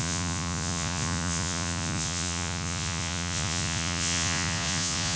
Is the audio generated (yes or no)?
yes